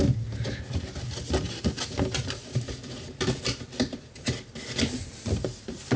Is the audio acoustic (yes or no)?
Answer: yes